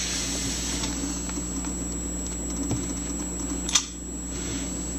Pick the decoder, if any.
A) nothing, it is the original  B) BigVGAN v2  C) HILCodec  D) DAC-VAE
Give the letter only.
A